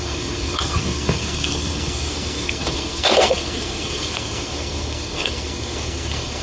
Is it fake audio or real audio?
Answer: fake